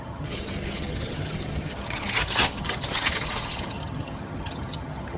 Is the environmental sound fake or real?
fake